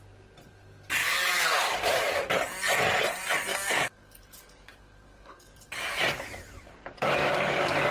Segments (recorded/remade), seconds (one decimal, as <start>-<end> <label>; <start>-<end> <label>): 0.0-1.0 recorded; 1.0-2.2 remade; 2.2-3.5 recorded; 3.5-7.9 remade

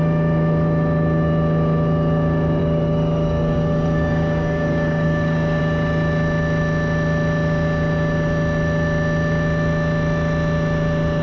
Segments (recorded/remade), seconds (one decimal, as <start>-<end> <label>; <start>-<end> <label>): 0.0-2.6 recorded; 2.6-5.6 remade; 5.6-11.2 recorded

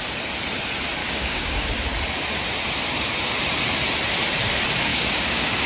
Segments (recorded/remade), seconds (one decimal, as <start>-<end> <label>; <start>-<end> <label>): 0.0-1.0 recorded; 1.0-1.7 remade; 1.7-4.9 recorded; 4.9-5.7 remade

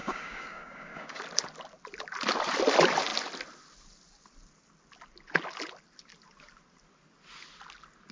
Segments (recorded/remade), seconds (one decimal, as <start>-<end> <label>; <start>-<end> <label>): 0.0-1.2 remade; 1.2-8.1 recorded

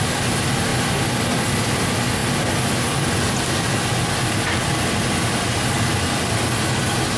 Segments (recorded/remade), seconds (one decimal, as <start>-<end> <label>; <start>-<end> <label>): 0.0-7.2 recorded

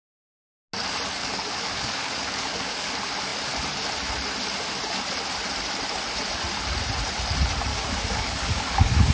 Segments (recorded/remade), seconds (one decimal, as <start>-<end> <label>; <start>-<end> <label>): 0.0-1.2 recorded; 1.2-2.9 remade; 2.9-7.7 recorded; 7.7-9.1 remade

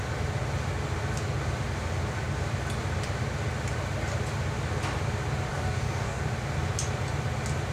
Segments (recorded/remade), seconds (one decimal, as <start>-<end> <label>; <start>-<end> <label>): 0.0-5.5 recorded; 5.5-6.2 remade; 6.2-7.7 recorded